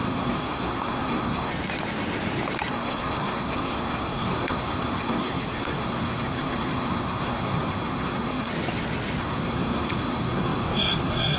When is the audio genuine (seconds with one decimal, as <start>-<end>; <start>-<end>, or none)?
1.5-2.7; 8.5-9.2